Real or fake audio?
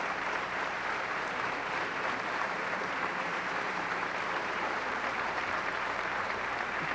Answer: fake